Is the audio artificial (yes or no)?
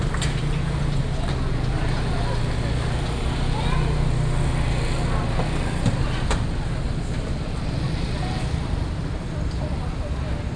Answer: no